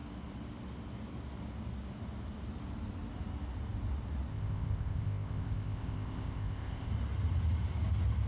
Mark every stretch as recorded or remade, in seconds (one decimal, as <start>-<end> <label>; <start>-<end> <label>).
0.0-4.3 recorded; 4.3-6.9 remade; 6.9-8.3 recorded